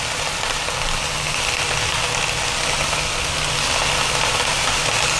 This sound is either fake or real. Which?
real